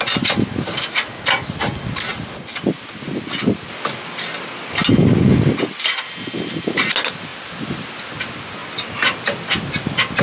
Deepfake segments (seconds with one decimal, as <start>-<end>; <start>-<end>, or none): 2.1-3.1; 7.3-7.9